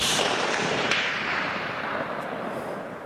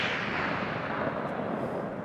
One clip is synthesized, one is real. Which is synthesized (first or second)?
first